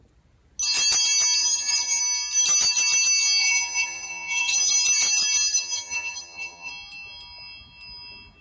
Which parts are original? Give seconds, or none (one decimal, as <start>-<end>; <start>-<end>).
0.0-1.4; 2.0-3.4; 4.7-5.5; 6.7-8.4